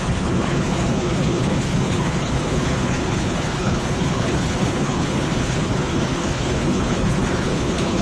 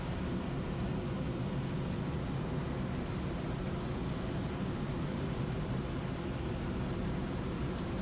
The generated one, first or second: first